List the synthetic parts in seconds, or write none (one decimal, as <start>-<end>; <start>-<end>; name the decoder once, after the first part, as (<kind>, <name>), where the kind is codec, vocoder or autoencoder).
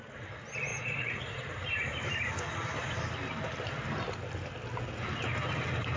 0.7-1.5 (vocoder, Vocos)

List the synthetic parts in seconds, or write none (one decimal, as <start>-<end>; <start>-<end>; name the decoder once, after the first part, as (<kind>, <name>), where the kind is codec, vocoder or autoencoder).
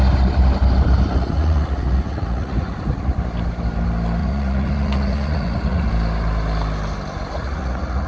1.1-3.1 (vocoder, Vocos); 4.2-5.9; 7.3-8.1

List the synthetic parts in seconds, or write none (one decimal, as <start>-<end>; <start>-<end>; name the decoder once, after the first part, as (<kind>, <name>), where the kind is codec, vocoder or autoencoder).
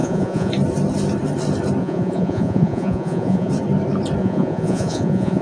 0.0-0.5 (vocoder, Vocos); 1.8-3.5; 4.2-5.4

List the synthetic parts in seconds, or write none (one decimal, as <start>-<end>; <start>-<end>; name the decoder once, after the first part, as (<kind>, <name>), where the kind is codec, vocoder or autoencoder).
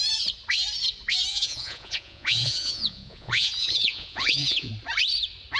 1.3-4.7 (vocoder, Vocos)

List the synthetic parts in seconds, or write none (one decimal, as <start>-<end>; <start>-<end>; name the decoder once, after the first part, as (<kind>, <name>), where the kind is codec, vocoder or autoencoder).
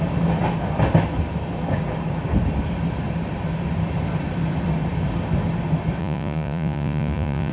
6.0-7.5 (vocoder, Vocos)